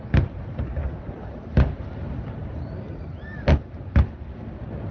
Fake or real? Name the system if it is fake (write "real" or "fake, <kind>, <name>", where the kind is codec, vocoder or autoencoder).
real